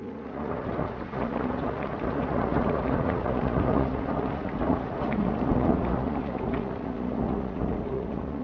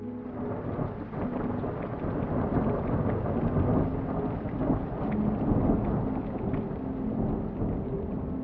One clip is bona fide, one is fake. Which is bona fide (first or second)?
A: second